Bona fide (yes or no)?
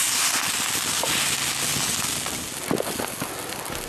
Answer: yes